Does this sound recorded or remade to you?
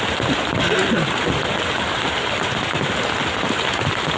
recorded